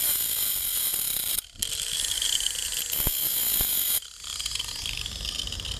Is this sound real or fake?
real